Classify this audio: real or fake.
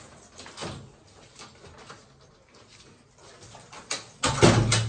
real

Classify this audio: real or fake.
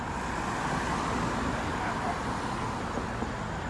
real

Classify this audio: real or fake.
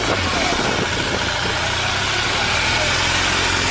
real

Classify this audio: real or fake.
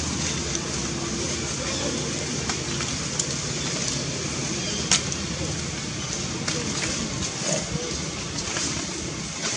real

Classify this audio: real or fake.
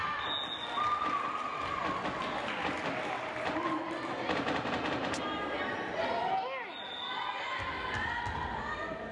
real